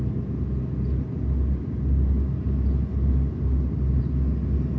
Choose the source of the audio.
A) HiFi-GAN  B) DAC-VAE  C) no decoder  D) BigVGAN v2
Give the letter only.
C